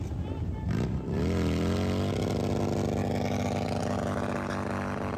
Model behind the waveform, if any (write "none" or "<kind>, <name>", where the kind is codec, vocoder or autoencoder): none